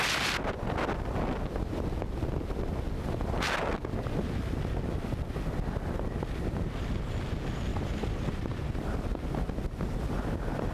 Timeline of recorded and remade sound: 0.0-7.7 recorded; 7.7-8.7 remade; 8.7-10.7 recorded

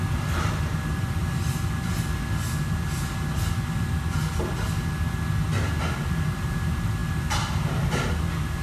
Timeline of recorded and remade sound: 0.0-8.6 recorded

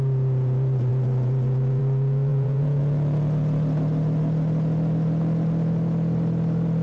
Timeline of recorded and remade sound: 0.0-2.3 recorded; 2.3-2.8 remade; 2.8-6.8 recorded

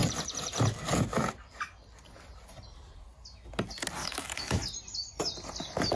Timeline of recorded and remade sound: 0.0-4.0 recorded; 4.0-4.6 remade; 4.6-6.0 recorded